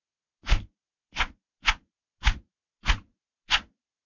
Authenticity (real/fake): real